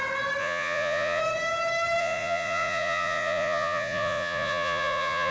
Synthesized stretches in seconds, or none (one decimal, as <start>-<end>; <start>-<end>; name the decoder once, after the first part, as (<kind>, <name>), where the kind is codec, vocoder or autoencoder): 0.4-1.2 (vocoder, Vocos); 2.0-5.3